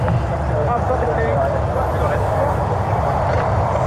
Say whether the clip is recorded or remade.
remade